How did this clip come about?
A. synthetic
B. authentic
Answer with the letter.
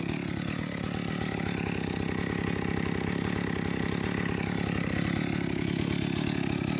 B